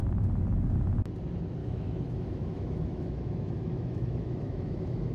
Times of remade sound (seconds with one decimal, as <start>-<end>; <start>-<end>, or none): 1.6-5.1